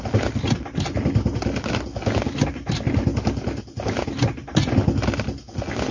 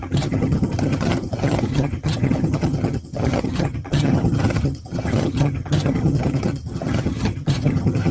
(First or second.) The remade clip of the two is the second